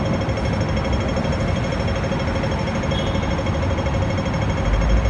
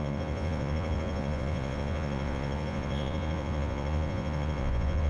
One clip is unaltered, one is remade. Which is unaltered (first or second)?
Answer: first